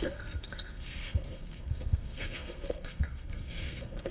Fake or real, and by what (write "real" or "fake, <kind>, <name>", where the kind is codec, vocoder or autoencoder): fake, codec, SNAC